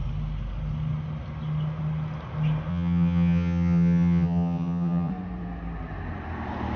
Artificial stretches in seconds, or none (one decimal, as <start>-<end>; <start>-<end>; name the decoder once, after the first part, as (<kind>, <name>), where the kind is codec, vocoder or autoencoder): 2.7-5.1 (vocoder, HiFi-GAN)